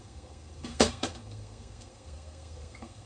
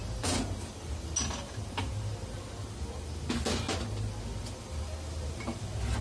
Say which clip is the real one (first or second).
second